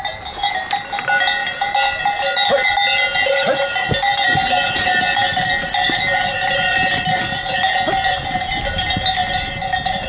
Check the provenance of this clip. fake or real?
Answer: real